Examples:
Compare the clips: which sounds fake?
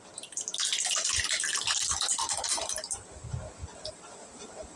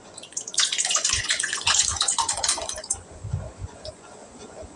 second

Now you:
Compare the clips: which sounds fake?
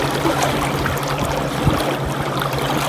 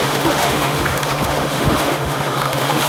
second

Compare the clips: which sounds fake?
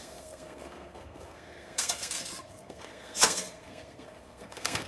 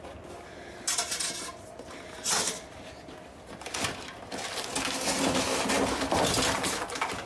first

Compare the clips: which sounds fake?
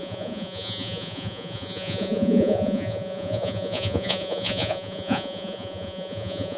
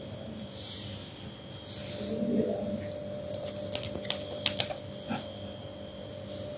first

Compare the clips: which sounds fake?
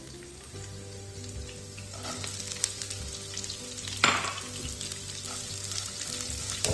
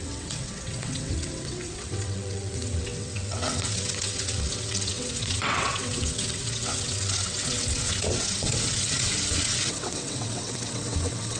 second